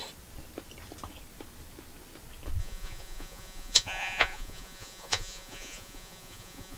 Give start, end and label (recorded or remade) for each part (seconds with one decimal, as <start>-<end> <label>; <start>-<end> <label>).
0.0-2.6 recorded; 2.6-6.8 remade